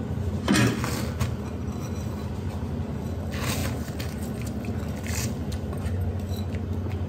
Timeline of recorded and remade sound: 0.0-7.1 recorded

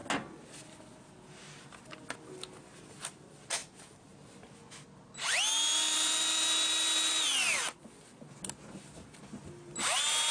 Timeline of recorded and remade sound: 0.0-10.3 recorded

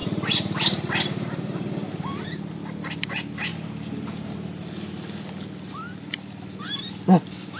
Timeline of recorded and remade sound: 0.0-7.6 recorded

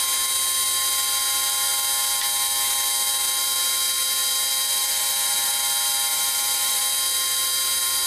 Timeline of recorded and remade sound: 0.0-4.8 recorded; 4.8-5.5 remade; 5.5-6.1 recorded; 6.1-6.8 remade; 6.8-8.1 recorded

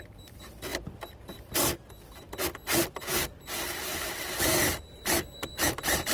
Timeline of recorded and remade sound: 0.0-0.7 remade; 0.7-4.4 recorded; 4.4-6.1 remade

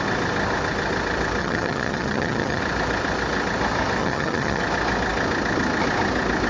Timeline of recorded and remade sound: 0.0-1.4 recorded; 1.4-2.6 remade; 2.6-4.0 recorded; 4.0-4.6 remade; 4.6-6.5 recorded

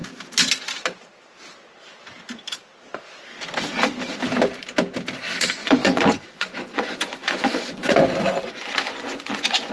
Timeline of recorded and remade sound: 0.0-5.6 recorded; 5.6-9.7 remade